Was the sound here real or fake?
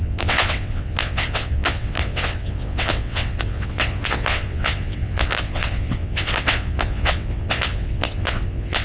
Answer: fake